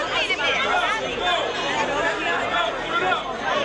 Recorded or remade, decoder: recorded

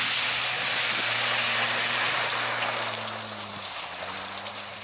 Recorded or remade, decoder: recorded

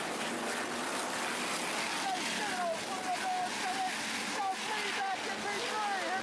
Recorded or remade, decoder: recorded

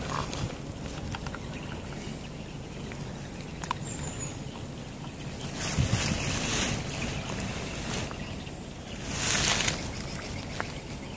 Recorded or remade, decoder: recorded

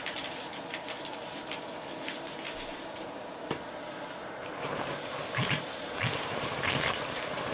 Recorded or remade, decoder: remade, vocoder, BigVGAN v2